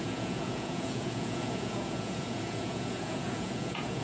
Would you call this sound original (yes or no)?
no